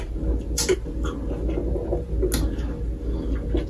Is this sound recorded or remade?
recorded